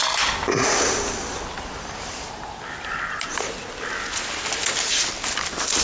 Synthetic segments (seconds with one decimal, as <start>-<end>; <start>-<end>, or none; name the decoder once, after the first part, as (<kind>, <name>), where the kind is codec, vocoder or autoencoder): none